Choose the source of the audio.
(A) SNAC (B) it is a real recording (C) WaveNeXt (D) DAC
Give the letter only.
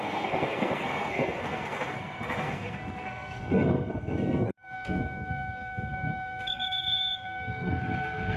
A